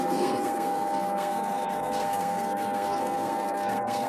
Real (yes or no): no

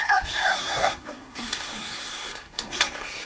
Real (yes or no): no